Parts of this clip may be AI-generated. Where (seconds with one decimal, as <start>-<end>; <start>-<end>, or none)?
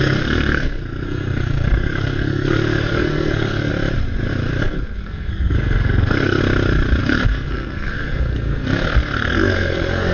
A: 0.0-3.7; 4.6-6.4; 7.0-10.1